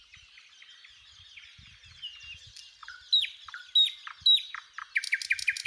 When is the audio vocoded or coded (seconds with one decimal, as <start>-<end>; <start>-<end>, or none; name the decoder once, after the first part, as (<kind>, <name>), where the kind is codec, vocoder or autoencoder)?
none